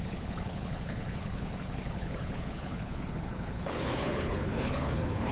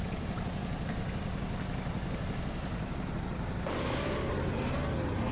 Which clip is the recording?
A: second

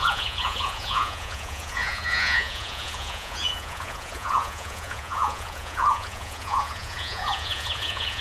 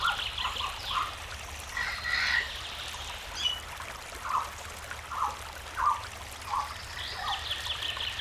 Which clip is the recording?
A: second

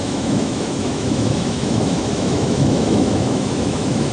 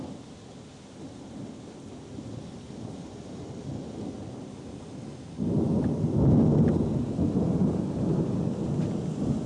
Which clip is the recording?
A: second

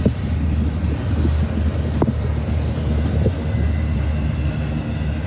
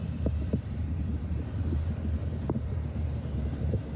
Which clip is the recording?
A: first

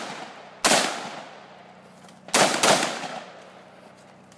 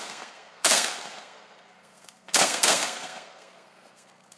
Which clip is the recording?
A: first